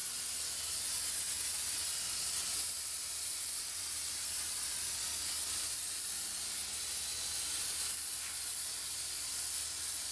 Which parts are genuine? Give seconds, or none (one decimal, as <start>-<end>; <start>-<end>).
0.0-2.2; 6.6-8.7